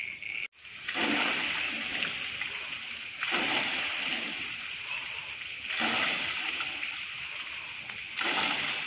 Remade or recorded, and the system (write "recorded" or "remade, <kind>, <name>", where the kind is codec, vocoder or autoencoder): recorded